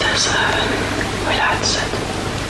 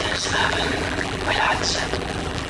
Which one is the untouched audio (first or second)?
first